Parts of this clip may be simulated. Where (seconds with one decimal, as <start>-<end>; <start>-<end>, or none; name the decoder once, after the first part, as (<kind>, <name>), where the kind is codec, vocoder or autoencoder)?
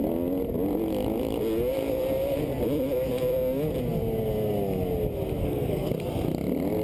5.4-5.9 (codec, SNAC)